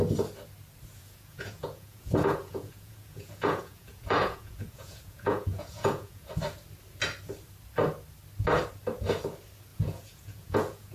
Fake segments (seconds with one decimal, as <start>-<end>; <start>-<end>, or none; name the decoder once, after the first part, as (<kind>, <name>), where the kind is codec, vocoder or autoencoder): 1.0-6.3 (vocoder, Vocos); 9.7-10.9